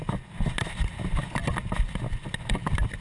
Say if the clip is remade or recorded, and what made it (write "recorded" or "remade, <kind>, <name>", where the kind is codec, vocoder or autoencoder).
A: recorded